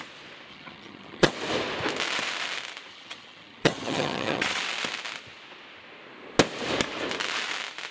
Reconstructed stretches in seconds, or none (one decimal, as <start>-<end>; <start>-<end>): 0.5-1.3; 2.9-4.6